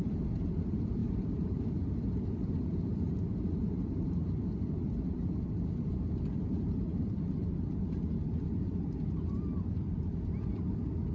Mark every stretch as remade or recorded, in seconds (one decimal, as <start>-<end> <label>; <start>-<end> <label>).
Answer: 0.0-11.1 remade